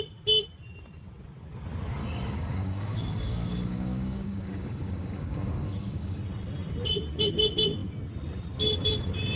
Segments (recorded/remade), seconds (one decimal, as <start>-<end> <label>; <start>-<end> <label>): 0.0-2.0 recorded; 2.0-6.2 remade; 6.2-9.4 recorded